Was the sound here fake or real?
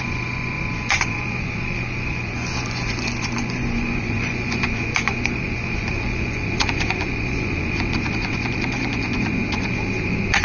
fake